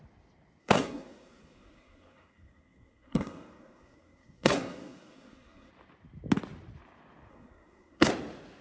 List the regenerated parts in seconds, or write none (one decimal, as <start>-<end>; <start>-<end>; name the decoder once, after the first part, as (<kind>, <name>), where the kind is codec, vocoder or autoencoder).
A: 0.6-5.7 (codec, SNAC); 7.3-8.1